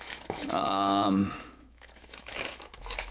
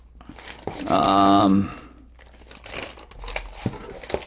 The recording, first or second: second